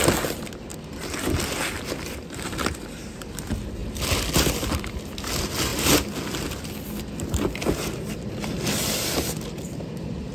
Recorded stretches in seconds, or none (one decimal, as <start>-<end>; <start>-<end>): 0.0-3.8; 4.3-10.3